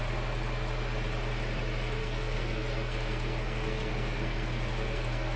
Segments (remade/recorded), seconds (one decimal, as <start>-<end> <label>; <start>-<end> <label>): 0.0-2.0 recorded; 2.0-5.4 remade